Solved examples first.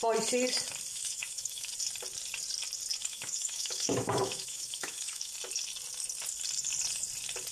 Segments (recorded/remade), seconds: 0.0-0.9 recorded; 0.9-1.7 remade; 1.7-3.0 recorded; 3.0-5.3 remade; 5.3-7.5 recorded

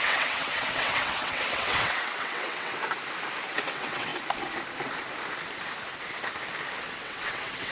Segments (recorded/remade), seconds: 0.0-2.8 remade; 2.8-3.5 recorded; 3.5-4.1 remade; 4.1-7.0 recorded; 7.0-7.7 remade

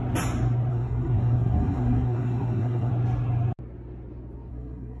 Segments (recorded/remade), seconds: 0.0-0.7 recorded; 0.7-2.9 remade; 2.9-4.5 recorded; 4.5-5.0 remade

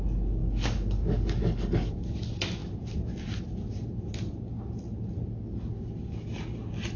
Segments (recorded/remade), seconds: 0.0-0.4 recorded; 0.4-1.9 remade; 1.9-7.0 recorded

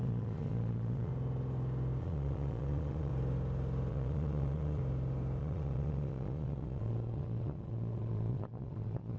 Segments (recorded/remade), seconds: 0.0-1.1 remade; 1.1-2.0 recorded; 2.0-3.1 remade; 3.1-3.9 recorded; 3.9-4.8 remade; 4.8-5.4 recorded; 5.4-9.2 remade

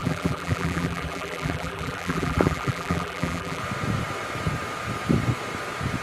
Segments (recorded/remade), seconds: 0.0-3.6 remade; 3.6-6.0 recorded

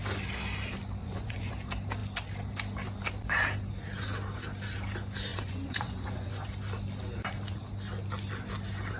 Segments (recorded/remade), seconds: 0.0-1.0 recorded; 1.0-1.5 remade; 1.5-5.3 recorded; 5.3-6.3 remade; 6.3-9.0 recorded

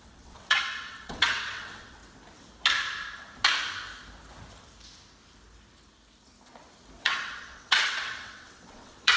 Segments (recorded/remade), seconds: 0.0-2.0 remade; 2.0-7.0 recorded; 7.0-9.2 remade